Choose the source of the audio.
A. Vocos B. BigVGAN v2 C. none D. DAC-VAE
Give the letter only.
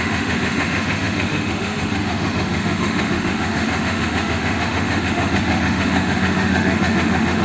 D